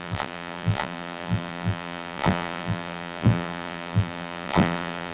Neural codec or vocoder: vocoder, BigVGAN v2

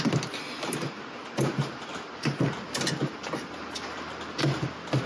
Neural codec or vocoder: none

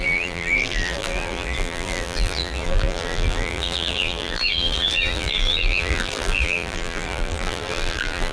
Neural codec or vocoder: vocoder, BigVGAN v2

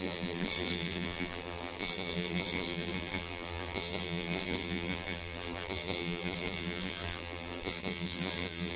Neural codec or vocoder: vocoder, BigVGAN v2